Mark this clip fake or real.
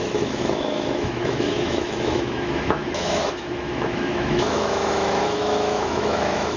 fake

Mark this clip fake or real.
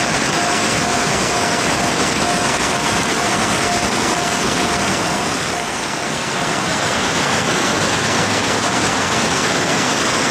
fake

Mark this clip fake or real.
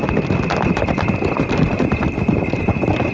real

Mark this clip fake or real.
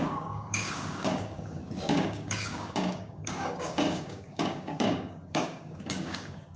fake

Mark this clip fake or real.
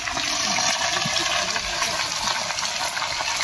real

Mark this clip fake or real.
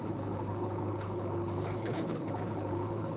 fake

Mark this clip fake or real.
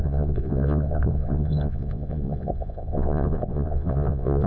fake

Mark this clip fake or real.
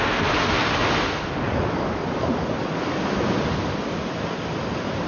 real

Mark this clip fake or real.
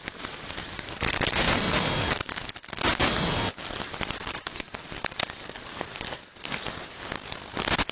real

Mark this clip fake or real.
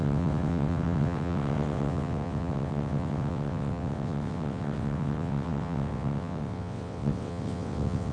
fake